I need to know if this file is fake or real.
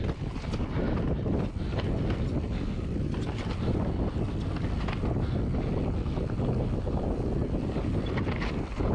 real